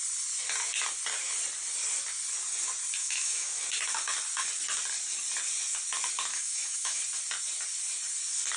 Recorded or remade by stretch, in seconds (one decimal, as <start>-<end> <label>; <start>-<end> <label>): 0.0-3.0 recorded; 3.0-3.6 remade; 3.6-6.3 recorded; 6.3-7.0 remade; 7.0-8.6 recorded